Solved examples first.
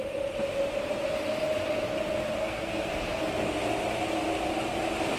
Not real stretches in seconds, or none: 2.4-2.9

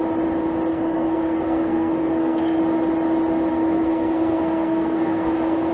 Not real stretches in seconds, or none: 0.7-2.6; 3.5-5.7

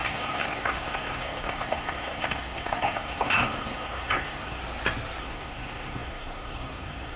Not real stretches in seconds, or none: 0.0-4.6; 5.2-7.2

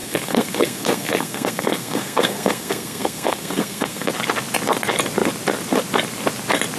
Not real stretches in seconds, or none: 0.0-4.1

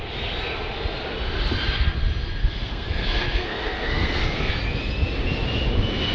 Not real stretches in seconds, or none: 2.4-4.5

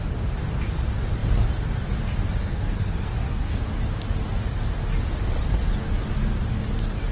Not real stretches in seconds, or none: 2.4-3.6

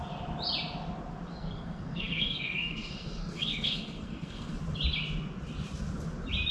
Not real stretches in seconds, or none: 1.3-4.6